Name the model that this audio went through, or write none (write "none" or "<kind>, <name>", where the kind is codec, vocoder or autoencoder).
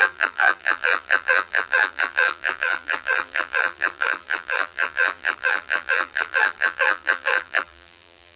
vocoder, BigVGAN v2